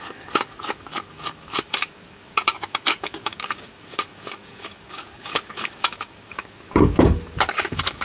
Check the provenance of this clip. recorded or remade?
remade